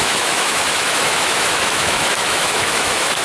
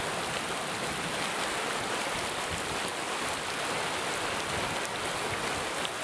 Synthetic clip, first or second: first